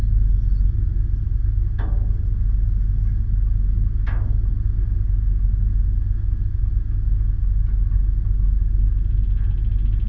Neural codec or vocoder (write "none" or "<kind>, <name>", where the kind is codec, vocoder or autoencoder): none